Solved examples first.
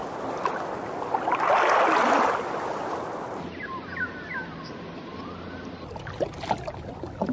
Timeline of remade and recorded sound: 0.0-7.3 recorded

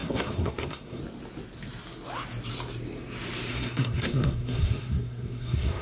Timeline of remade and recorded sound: 0.0-1.0 remade; 1.0-3.5 recorded; 3.5-5.8 remade

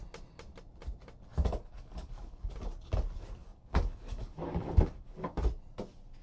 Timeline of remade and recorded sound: 0.0-1.3 recorded; 1.3-2.5 remade; 2.5-3.4 recorded; 3.4-5.4 remade; 5.4-6.2 recorded

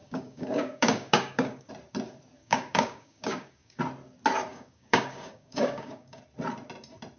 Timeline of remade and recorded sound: 0.0-1.7 remade; 1.7-2.4 recorded; 2.4-3.8 remade; 3.8-4.5 recorded; 4.5-6.2 remade; 6.2-7.2 recorded